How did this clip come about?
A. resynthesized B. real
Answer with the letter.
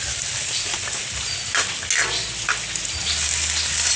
B